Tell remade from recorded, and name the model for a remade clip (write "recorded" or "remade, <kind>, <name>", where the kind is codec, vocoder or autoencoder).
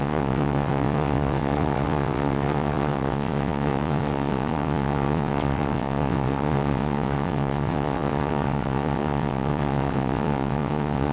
remade, vocoder, WaveNeXt